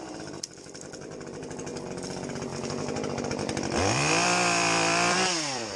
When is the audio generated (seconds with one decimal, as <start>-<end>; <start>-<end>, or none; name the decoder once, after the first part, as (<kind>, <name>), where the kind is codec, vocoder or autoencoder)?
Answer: 0.0-1.7 (vocoder, BigVGAN v2); 3.3-5.8